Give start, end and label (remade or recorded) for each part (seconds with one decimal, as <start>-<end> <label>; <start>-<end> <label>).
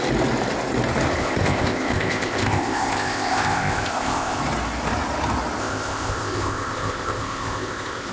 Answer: 0.0-1.2 recorded; 1.2-4.4 remade; 4.4-5.6 recorded; 5.6-8.1 remade